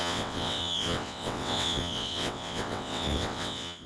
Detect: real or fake fake